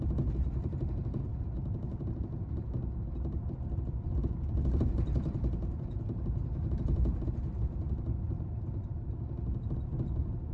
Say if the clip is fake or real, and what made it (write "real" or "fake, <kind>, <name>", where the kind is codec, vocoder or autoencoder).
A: fake, vocoder, BigVGAN v2